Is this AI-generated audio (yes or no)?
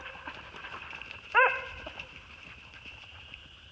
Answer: yes